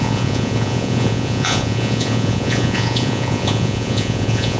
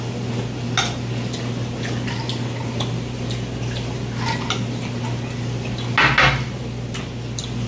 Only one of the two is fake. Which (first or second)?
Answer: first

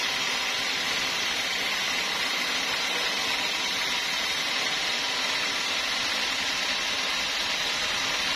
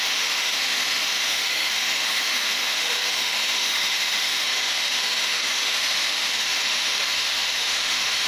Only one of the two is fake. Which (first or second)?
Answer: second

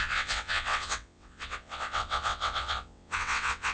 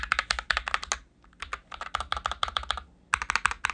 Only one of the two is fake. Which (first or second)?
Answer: first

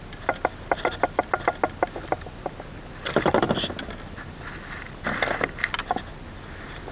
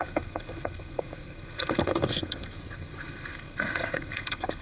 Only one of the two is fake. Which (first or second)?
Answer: second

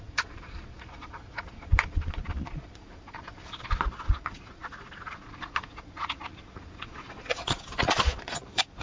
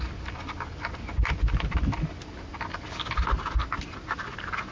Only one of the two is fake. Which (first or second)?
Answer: first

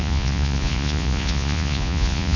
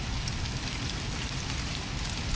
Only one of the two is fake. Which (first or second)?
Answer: first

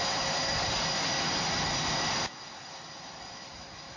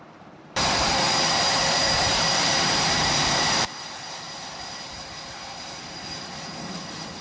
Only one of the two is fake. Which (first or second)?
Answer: second